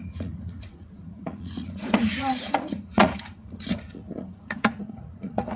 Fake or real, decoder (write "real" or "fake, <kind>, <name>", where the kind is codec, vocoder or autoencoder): fake, vocoder, Vocos